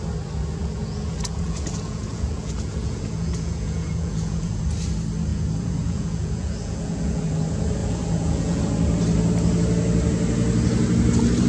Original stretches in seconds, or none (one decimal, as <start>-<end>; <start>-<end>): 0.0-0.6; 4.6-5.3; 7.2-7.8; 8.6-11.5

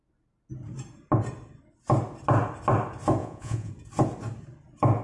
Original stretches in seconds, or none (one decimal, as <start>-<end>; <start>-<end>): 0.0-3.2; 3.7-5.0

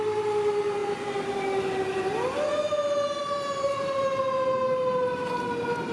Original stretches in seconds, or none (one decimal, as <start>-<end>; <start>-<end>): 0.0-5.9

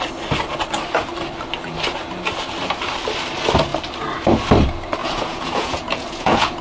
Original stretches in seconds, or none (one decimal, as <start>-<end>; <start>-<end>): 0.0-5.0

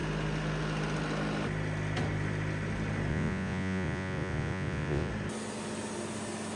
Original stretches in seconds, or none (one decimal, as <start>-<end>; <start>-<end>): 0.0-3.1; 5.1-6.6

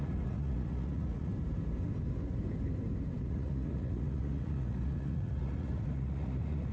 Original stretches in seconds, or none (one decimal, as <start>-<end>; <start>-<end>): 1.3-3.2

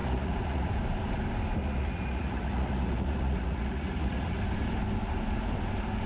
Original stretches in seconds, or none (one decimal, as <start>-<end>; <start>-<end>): 0.7-1.6; 4.4-6.1